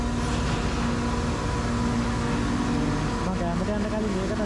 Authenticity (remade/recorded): recorded